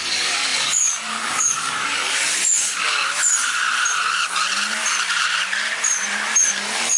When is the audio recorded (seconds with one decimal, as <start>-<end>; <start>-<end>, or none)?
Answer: 3.0-6.5